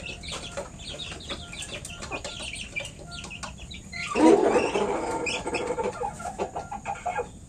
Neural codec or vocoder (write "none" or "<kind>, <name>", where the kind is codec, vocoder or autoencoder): none